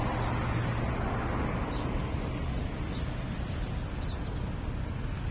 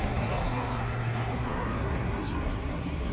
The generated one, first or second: second